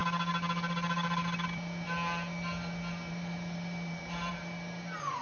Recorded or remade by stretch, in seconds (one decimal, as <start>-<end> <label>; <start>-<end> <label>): 0.0-3.1 recorded; 3.1-5.2 remade